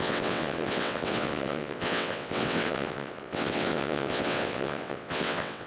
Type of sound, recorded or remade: remade